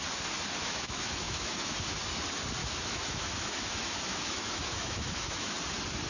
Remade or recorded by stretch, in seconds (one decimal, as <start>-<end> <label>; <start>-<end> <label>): 0.0-0.6 recorded; 0.6-2.0 remade; 2.0-2.6 recorded; 2.6-5.5 remade; 5.5-6.1 recorded